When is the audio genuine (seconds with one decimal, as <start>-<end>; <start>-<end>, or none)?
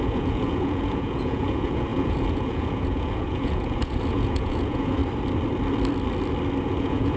5.0-6.6